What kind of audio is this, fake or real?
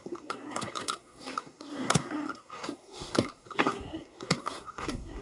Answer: fake